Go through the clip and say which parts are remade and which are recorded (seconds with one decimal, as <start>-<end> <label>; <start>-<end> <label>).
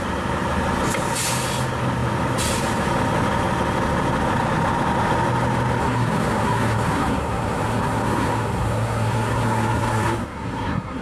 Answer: 0.0-5.8 recorded; 5.8-11.0 remade